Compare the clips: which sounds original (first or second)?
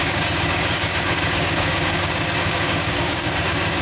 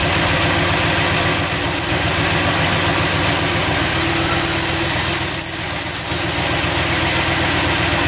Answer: second